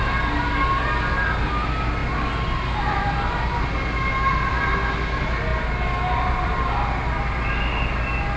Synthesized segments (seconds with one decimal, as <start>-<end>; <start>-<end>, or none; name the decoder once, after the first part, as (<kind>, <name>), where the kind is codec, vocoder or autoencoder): none